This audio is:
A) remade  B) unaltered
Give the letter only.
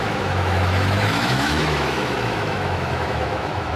A